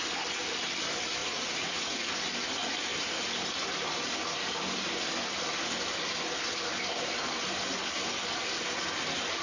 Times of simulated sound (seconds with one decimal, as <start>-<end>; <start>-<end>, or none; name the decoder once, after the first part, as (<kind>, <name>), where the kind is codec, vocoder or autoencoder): 1.2-2.1 (vocoder, Vocos)